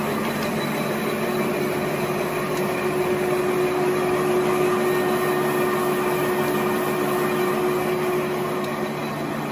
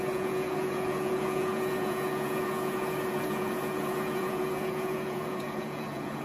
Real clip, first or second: first